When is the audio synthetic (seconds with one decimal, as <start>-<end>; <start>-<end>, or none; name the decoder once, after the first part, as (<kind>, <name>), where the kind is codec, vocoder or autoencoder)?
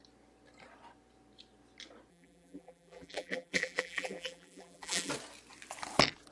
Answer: 2.1-5.1 (vocoder, BigVGAN v2)